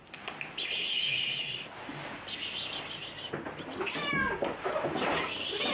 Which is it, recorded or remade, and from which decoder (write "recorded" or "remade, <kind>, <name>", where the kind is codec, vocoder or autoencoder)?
recorded